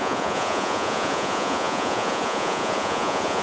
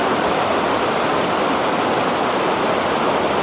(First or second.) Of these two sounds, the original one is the second